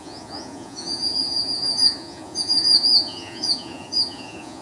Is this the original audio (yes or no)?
no